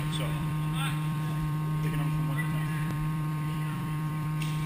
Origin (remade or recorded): remade